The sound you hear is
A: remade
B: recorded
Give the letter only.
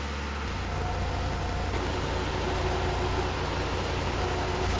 B